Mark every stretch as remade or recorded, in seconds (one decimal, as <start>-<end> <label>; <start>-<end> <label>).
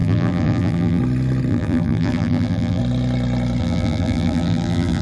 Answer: 0.0-1.0 remade; 1.0-1.5 recorded; 1.5-2.8 remade; 2.8-3.6 recorded; 3.6-5.0 remade